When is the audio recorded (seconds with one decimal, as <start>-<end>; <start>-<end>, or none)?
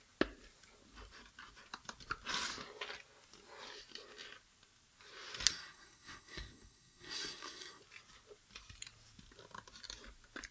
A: 0.0-5.5; 7.8-10.5